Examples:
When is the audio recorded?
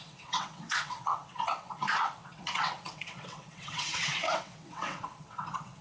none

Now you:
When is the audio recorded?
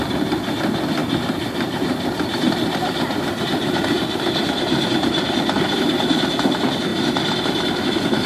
0.0-1.0; 5.9-6.9; 7.9-8.3